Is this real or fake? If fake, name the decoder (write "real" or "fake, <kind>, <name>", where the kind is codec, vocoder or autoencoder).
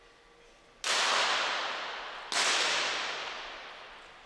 real